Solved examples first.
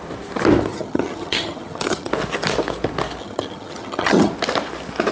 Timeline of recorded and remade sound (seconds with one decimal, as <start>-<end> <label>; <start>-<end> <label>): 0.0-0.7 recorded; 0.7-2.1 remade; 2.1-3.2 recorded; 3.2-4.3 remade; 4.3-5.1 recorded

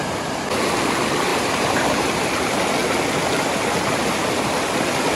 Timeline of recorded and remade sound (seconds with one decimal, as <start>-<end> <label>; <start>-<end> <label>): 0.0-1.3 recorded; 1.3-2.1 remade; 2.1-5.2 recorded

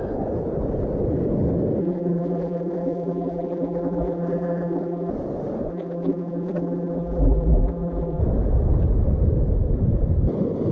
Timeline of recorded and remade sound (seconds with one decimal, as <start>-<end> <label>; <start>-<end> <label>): 0.0-1.8 recorded; 1.8-5.1 remade; 5.1-5.7 recorded; 5.7-8.2 remade; 8.2-10.7 recorded

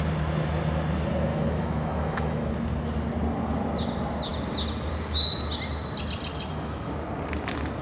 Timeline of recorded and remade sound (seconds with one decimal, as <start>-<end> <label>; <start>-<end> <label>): 0.0-1.3 recorded; 1.3-2.5 remade; 2.5-6.3 recorded; 6.3-6.9 remade; 6.9-7.8 recorded